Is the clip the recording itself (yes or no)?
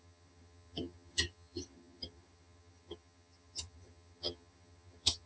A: no